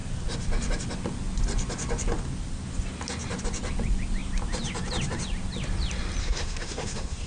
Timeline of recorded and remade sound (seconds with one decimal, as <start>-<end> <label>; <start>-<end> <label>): 0.0-6.2 recorded; 6.2-7.3 remade

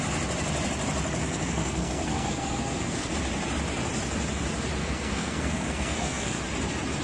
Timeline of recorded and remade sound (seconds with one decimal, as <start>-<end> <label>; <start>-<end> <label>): 0.0-1.2 recorded; 1.2-3.1 remade; 3.1-4.8 recorded; 4.8-6.4 remade; 6.4-7.0 recorded

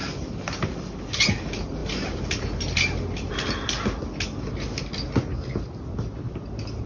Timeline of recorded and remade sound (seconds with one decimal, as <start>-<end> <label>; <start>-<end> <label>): 0.0-6.9 recorded

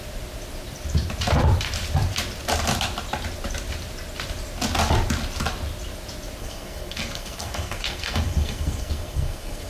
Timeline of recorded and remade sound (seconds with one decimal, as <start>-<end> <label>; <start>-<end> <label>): 0.0-6.4 recorded; 6.4-9.7 remade

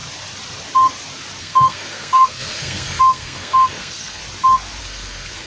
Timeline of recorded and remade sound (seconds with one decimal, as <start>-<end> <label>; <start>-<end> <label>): 0.0-1.4 recorded; 1.4-4.2 remade; 4.2-4.8 recorded; 4.8-5.5 remade

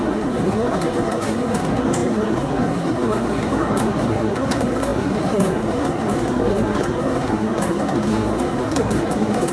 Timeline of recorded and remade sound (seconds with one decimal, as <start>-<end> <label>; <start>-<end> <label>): 0.0-9.5 remade